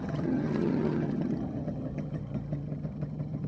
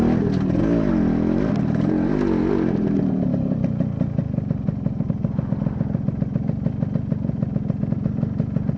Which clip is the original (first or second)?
second